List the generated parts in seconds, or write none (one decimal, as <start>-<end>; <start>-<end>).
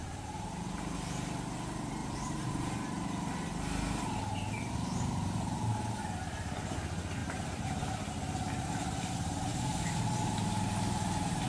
0.0-0.6; 2.0-2.7; 7.2-8.1